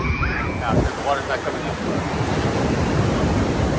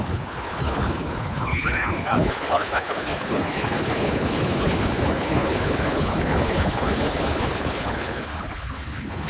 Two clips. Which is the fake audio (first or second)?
second